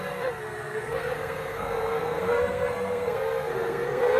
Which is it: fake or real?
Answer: fake